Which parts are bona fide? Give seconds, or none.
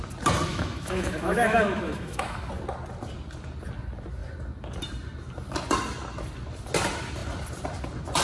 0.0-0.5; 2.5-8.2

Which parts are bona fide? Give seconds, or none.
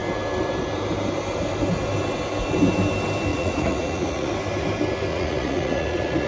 0.0-3.3; 4.3-5.1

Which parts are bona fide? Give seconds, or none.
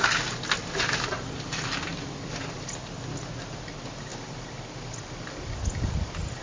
0.0-6.4